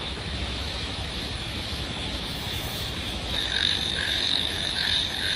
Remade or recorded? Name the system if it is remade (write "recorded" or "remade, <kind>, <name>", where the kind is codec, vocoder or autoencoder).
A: remade, autoencoder, DAC-VAE